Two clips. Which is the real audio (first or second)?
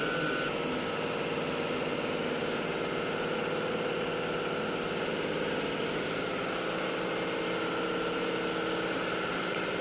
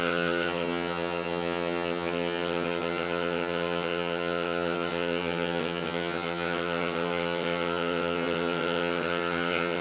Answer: first